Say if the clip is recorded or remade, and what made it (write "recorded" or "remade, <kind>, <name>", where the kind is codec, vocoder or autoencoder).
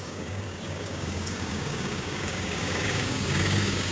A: remade, codec, DAC